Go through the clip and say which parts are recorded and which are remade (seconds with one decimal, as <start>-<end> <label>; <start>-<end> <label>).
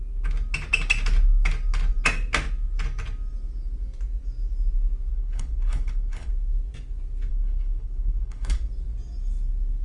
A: 0.0-5.1 recorded; 5.1-6.3 remade; 6.3-7.3 recorded; 7.3-8.7 remade; 8.7-9.8 recorded